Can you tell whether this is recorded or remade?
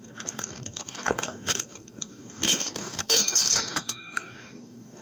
remade